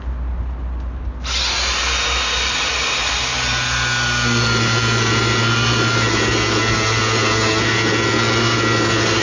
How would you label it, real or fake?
real